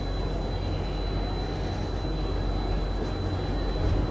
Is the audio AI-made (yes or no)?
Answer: no